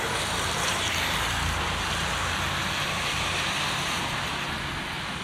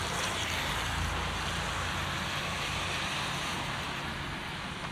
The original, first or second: second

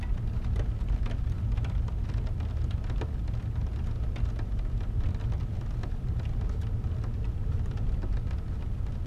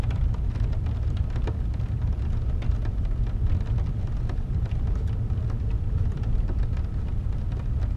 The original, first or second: first